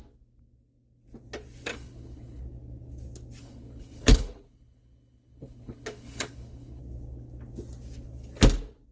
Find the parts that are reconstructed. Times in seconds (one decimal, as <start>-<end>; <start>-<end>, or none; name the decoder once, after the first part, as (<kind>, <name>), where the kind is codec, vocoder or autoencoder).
1.7-2.4 (codec, HILCodec); 3.4-6.8